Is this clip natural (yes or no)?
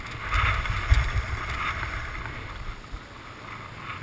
yes